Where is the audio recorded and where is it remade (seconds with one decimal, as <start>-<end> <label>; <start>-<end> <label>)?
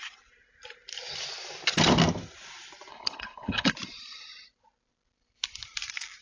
0.0-2.9 recorded; 2.9-3.7 remade; 3.7-6.2 recorded